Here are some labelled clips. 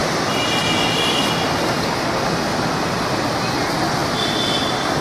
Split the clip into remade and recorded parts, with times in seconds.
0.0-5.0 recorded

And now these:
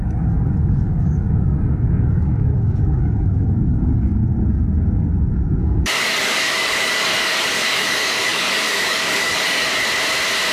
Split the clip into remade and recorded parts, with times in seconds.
0.0-4.2 remade; 4.2-5.6 recorded; 5.6-9.7 remade; 9.7-10.5 recorded

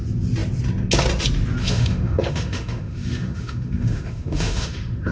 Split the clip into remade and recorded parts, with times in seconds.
0.0-1.6 recorded; 1.6-5.1 remade

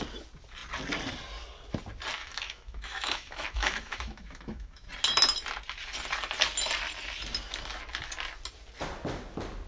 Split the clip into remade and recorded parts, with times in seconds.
0.0-2.2 recorded; 2.2-4.9 remade; 4.9-9.7 recorded